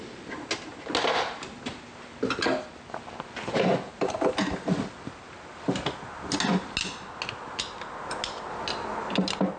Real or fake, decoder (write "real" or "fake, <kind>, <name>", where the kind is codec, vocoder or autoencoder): real